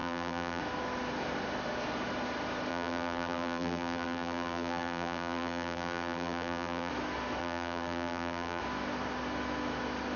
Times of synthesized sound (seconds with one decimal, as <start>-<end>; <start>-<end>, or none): 0.0-0.6; 2.7-6.9; 7.4-8.6